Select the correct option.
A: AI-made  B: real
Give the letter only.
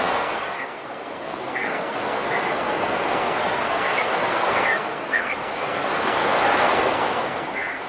A